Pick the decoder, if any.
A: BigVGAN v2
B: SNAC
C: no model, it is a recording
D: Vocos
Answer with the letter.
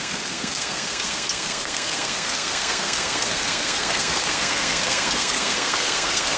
B